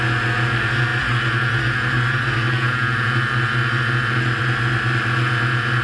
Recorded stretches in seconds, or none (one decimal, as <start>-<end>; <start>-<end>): 0.0-5.8

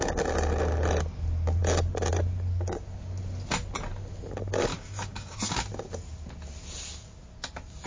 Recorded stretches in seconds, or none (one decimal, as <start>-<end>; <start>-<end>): 0.0-4.7; 5.6-7.9

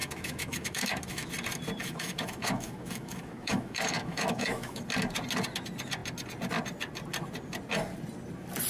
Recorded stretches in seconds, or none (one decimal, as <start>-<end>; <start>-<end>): 1.3-1.8; 4.8-8.7

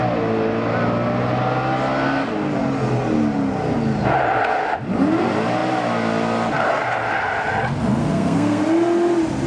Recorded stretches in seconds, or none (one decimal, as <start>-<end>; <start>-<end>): 0.0-8.0; 8.6-9.5

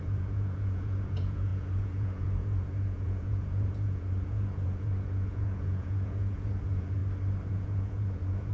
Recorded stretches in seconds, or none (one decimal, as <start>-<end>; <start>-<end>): 7.0-7.5